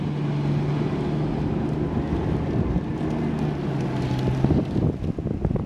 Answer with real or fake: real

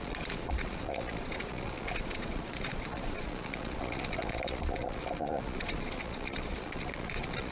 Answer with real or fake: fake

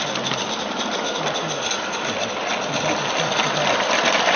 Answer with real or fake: real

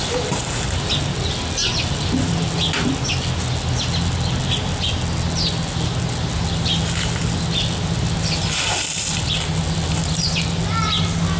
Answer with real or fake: real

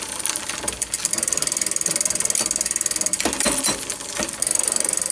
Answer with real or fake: real